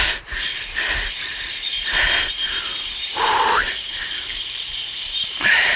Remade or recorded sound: remade